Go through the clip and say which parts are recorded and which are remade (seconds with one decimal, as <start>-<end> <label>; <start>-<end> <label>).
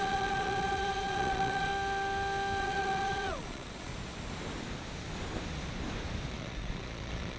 0.0-1.7 remade; 1.7-2.6 recorded; 2.6-3.9 remade; 3.9-6.3 recorded; 6.3-7.4 remade